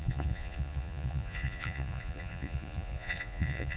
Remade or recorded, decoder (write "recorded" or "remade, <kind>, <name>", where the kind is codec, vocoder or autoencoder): remade, vocoder, Vocos